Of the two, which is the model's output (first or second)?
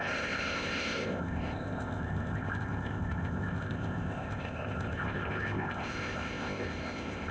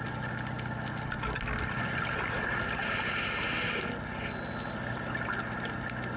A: first